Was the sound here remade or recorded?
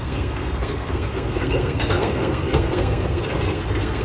remade